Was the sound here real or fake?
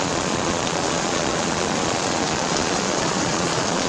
fake